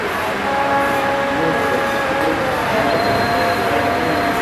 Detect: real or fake real